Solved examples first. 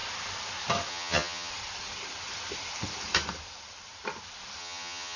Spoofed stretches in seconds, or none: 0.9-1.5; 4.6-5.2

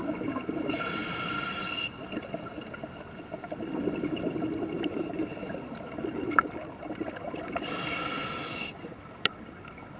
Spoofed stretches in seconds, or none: none

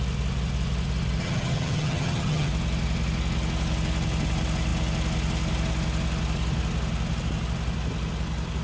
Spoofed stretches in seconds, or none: 1.2-2.5

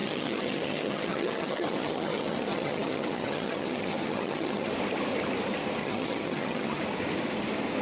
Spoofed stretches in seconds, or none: 0.0-4.7; 5.8-6.8

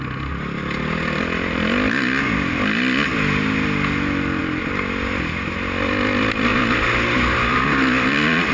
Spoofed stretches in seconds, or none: none

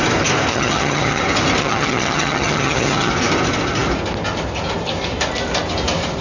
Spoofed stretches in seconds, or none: 0.5-1.2; 1.6-3.1